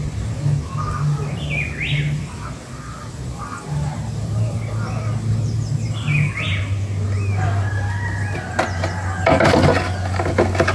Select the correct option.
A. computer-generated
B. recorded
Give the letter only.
B